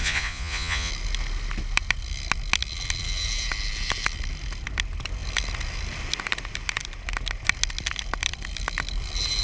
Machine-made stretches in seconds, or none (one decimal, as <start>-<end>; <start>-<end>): 0.0-0.9